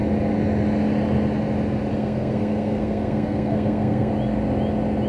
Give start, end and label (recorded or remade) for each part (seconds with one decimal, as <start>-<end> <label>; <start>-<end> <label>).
0.0-1.9 recorded; 1.9-4.1 remade; 4.1-5.1 recorded